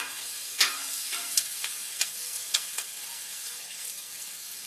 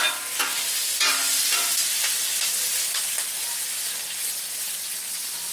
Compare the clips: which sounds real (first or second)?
second